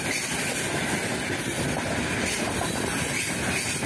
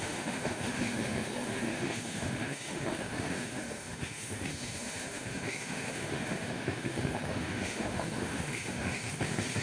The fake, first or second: second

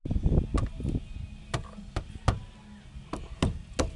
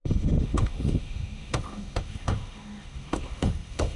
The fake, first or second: second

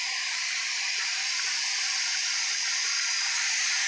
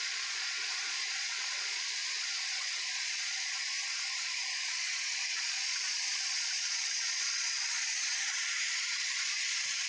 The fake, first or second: second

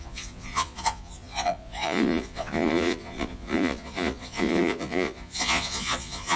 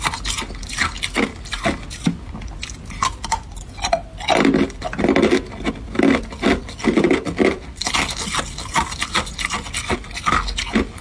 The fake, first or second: first